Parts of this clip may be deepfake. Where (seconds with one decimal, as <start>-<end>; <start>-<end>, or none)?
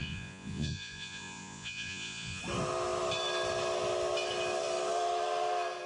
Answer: 0.0-2.4